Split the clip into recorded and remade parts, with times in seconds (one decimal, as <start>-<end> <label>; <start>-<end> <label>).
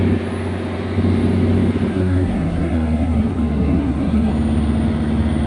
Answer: 0.0-1.9 recorded; 1.9-4.3 remade; 4.3-5.5 recorded